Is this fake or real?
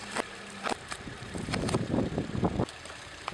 fake